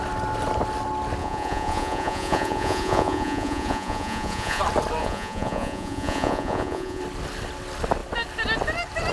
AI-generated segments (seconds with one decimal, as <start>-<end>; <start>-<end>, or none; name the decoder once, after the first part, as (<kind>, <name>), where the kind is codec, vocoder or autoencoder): 1.2-4.6 (vocoder, Vocos); 5.0-7.0